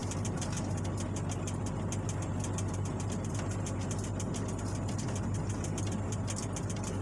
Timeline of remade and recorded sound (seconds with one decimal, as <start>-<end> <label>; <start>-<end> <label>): 0.0-7.0 recorded